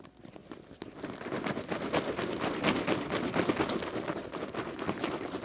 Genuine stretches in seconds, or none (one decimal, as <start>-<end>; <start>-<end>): 0.0-5.4